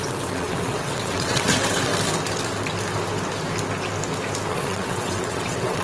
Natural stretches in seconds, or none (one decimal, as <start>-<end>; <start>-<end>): 1.9-4.5